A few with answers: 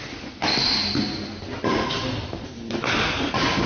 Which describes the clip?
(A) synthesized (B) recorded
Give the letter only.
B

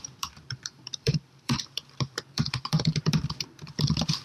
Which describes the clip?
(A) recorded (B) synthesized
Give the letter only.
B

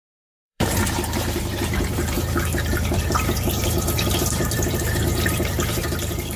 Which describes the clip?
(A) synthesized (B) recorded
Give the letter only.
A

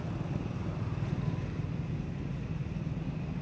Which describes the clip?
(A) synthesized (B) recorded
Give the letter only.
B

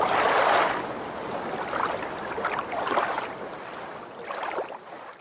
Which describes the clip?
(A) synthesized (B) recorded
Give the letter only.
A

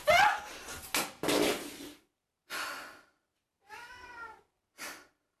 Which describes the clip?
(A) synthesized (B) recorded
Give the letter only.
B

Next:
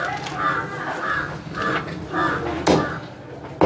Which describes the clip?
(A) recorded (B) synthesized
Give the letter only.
A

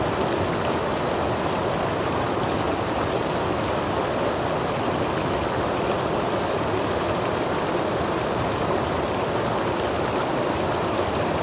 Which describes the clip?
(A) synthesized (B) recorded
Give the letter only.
B